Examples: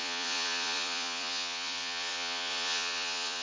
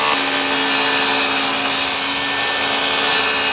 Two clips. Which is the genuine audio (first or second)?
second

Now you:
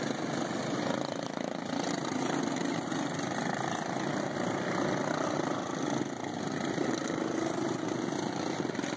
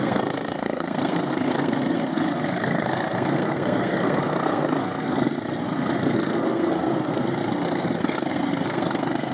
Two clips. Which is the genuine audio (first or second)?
first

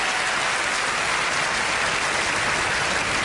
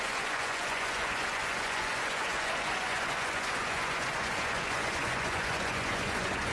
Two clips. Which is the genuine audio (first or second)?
first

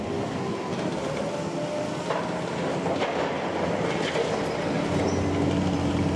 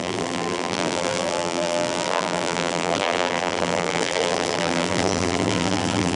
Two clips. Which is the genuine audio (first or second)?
first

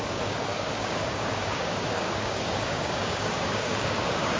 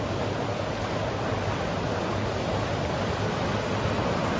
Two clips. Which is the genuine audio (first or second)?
second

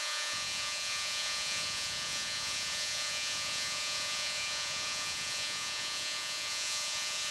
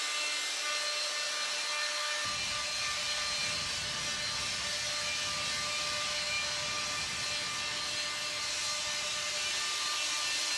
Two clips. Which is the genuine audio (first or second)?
second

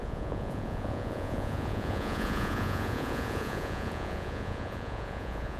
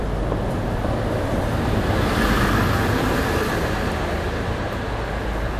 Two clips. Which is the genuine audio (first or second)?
second